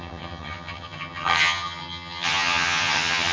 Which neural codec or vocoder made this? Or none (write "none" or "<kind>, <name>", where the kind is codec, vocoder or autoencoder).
vocoder, HiFi-GAN